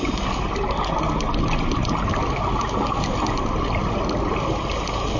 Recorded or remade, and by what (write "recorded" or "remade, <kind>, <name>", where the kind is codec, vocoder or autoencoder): recorded